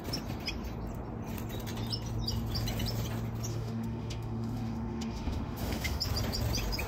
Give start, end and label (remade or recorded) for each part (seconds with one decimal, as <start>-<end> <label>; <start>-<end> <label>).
0.0-3.5 recorded; 3.5-6.0 remade; 6.0-6.9 recorded